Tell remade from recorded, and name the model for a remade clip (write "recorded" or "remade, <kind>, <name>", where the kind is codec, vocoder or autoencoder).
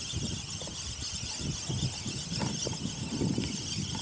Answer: recorded